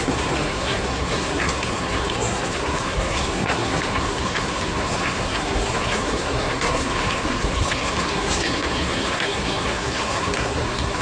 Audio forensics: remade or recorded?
remade